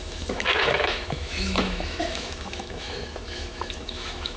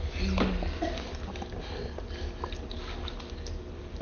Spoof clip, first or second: first